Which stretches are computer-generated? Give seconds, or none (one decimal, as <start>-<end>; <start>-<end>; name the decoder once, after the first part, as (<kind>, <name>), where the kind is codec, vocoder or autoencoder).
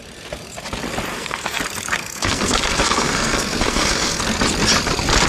1.1-1.6 (codec, SNAC); 2.0-4.2